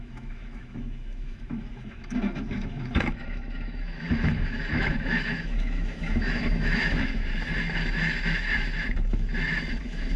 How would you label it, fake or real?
fake